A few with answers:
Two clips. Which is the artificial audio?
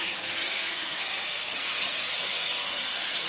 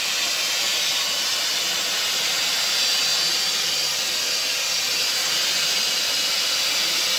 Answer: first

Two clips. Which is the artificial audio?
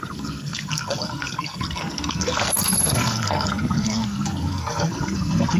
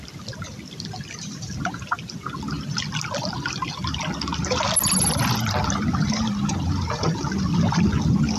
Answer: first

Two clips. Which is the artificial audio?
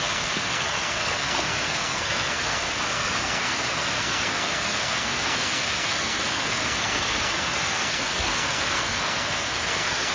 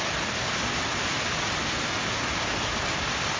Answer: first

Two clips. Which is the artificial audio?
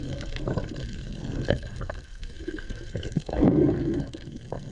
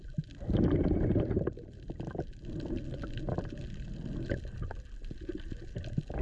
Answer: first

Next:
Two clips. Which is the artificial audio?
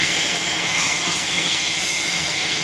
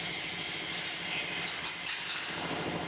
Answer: first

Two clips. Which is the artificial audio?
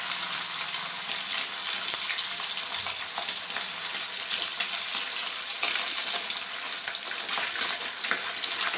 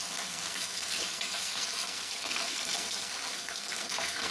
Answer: second